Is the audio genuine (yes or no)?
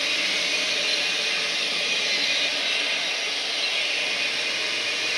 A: yes